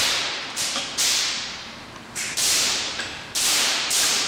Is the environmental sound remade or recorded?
remade